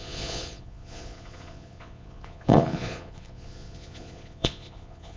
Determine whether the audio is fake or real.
fake